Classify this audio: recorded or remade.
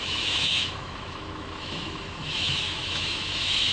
remade